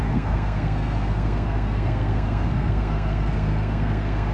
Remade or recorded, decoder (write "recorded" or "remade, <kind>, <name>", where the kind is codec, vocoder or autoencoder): remade, codec, SNAC